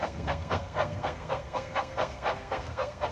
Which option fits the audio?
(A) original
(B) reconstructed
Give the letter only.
B